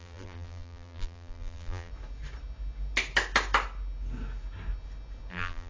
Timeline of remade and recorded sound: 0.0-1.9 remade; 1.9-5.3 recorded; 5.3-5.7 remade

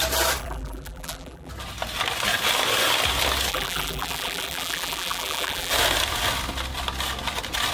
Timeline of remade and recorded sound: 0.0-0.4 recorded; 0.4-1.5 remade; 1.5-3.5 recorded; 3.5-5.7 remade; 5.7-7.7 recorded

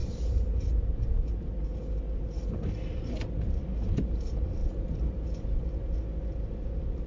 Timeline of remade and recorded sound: 0.0-1.1 remade; 1.1-4.6 recorded; 4.6-5.8 remade; 5.8-7.1 recorded

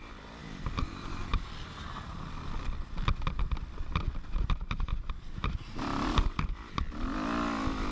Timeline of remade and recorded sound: 0.0-0.4 recorded; 0.4-0.9 remade; 0.9-1.3 recorded; 1.3-3.4 remade; 3.4-4.9 recorded; 4.9-7.9 remade

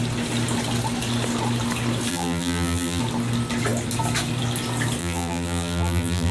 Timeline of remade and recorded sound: 0.0-2.1 recorded; 2.1-3.0 remade; 3.0-5.0 recorded; 5.0-6.3 remade

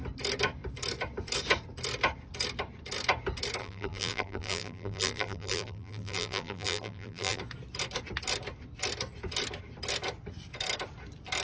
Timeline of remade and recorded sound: 0.0-3.6 recorded; 3.6-7.4 remade; 7.4-11.4 recorded

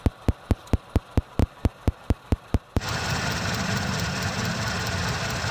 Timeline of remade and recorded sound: 0.0-1.4 recorded; 1.4-4.7 remade; 4.7-5.5 recorded

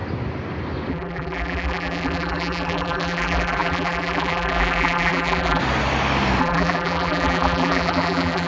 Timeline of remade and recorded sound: 0.0-0.9 recorded; 0.9-5.6 remade; 5.6-6.4 recorded; 6.4-8.5 remade